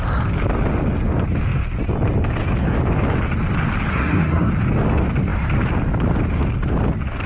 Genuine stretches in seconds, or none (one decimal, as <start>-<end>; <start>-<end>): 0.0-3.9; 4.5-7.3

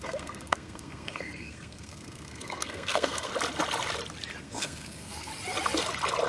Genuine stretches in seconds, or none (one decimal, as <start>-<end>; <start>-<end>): 3.3-4.4; 5.3-6.3

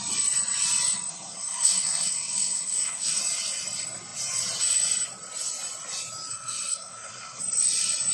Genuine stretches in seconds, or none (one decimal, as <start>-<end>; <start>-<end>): 0.0-1.1; 3.2-6.3; 7.4-8.1

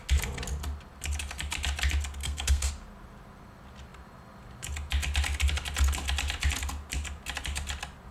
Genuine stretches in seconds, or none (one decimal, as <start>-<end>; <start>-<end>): 0.0-2.2; 2.7-8.1

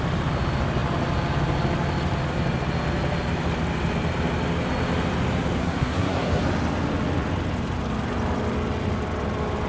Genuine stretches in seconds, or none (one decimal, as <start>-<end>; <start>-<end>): 0.0-5.6; 6.4-9.7

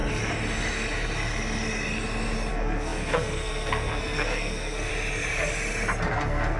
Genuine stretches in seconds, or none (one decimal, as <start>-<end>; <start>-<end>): 0.0-2.5; 4.9-6.1